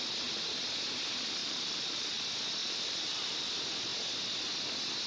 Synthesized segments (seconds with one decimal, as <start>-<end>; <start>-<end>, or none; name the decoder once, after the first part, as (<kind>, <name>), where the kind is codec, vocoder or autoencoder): 1.4-2.2 (vocoder, BigVGAN v2); 2.6-3.5